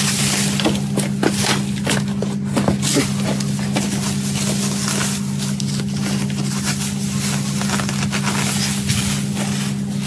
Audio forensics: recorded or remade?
recorded